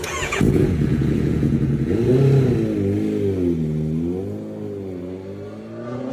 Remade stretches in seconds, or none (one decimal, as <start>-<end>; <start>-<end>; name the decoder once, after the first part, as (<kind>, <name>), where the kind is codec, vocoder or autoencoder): 0.0-2.1 (vocoder, Vocos)